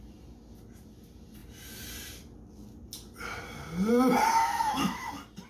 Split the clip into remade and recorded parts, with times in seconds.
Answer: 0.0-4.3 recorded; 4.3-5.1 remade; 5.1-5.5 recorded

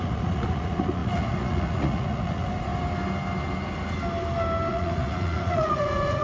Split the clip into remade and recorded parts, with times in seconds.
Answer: 0.0-2.7 remade; 2.7-4.7 recorded; 4.7-6.2 remade

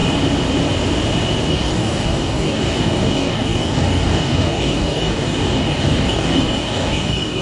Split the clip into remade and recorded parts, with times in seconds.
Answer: 0.0-1.5 recorded; 1.5-7.4 remade

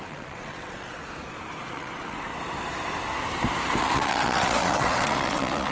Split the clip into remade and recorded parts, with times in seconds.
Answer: 0.0-1.0 remade; 1.0-1.7 recorded; 1.7-2.3 remade; 2.3-3.8 recorded; 3.8-5.7 remade

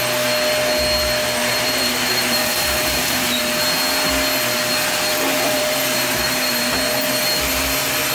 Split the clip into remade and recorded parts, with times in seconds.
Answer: 0.0-1.5 recorded; 1.5-3.4 remade; 3.4-5.1 recorded; 5.1-6.7 remade; 6.7-8.1 recorded

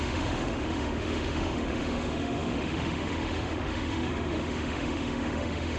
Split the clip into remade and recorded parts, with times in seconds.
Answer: 0.0-5.8 remade

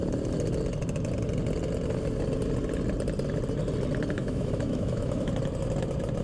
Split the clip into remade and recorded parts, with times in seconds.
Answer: 0.0-4.2 recorded; 4.2-5.3 remade; 5.3-6.2 recorded

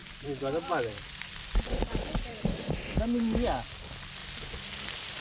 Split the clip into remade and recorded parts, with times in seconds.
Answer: 0.0-3.0 remade; 3.0-4.2 recorded; 4.2-5.2 remade